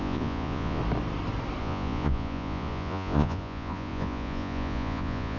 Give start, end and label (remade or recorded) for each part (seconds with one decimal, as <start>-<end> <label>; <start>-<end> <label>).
0.0-0.8 remade; 0.8-1.6 recorded; 1.6-5.4 remade